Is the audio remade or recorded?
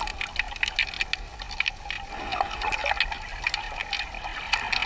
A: recorded